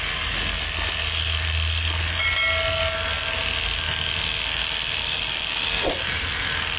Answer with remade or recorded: recorded